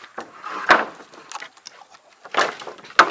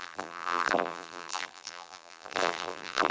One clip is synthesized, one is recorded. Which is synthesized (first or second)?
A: second